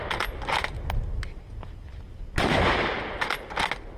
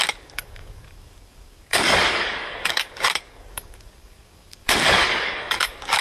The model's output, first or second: second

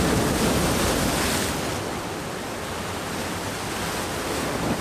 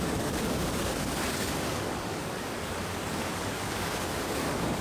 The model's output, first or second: second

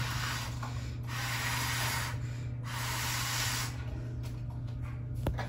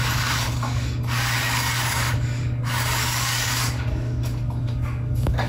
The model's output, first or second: second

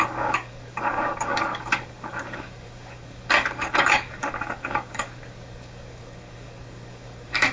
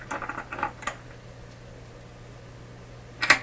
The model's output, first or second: first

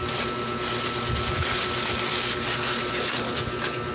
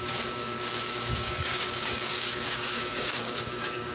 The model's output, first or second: second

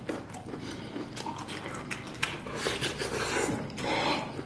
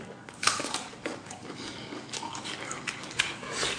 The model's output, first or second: second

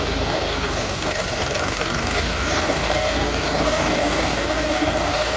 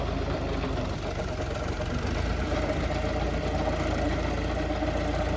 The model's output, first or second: first